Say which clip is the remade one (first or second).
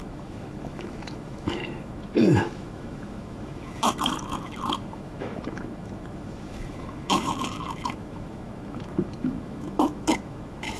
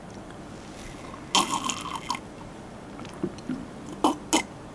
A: first